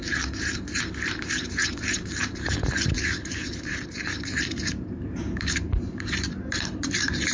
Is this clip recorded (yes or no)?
no